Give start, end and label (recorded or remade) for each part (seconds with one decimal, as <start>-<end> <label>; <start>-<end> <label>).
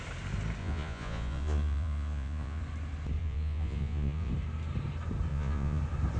0.0-0.6 recorded; 0.6-2.6 remade; 2.6-3.2 recorded; 3.2-4.3 remade; 4.3-5.3 recorded; 5.3-5.8 remade; 5.8-6.2 recorded